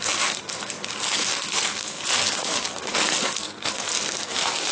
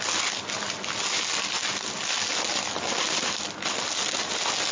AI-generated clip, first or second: first